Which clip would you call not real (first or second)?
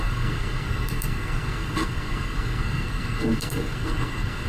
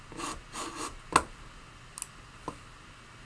first